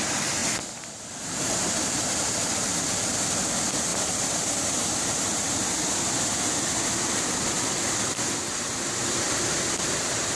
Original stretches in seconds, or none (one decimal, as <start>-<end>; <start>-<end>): 0.0-10.3